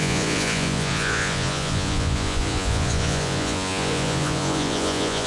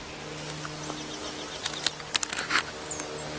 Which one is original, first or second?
second